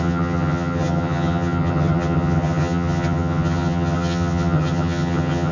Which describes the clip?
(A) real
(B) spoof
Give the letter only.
B